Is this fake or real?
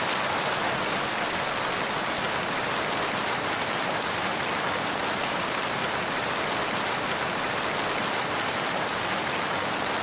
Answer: real